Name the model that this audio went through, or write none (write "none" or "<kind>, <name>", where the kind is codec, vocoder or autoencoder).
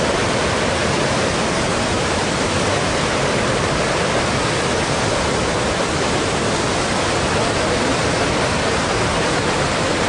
none